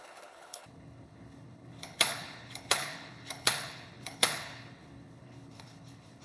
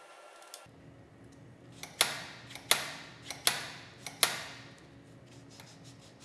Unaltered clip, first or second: second